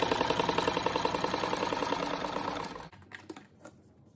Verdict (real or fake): real